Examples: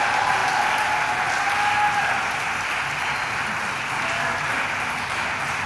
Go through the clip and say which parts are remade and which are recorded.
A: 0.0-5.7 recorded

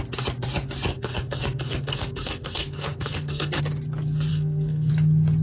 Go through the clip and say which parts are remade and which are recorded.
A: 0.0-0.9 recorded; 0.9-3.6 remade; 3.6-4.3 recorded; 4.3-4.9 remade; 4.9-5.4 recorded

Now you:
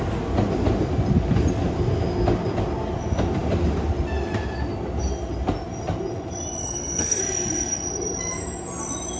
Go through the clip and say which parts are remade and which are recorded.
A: 0.0-6.6 recorded; 6.6-7.2 remade; 7.2-9.2 recorded

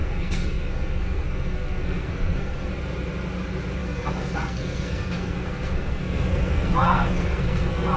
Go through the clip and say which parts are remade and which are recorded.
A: 0.0-2.7 remade; 2.7-3.8 recorded; 3.8-8.0 remade

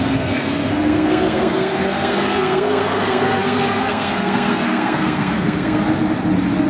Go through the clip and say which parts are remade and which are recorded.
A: 0.0-5.8 remade; 5.8-6.7 recorded

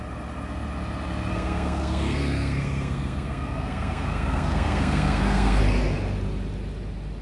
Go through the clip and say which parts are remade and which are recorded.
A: 0.0-1.3 recorded; 1.3-5.6 remade; 5.6-7.2 recorded

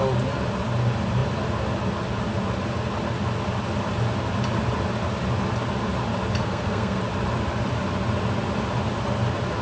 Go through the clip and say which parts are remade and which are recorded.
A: 0.0-6.4 recorded; 6.4-7.0 remade; 7.0-9.6 recorded

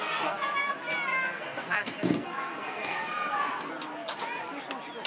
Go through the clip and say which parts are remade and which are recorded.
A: 0.0-0.7 remade; 0.7-1.1 recorded; 1.1-3.7 remade; 3.7-5.1 recorded